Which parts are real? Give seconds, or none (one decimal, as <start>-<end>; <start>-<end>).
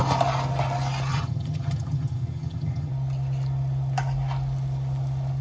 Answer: 0.0-1.1; 2.9-5.4